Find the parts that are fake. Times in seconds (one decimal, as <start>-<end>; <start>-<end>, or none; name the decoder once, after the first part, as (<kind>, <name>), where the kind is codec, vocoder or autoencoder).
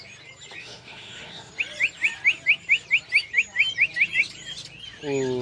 0.6-1.5 (autoencoder, DAC-VAE)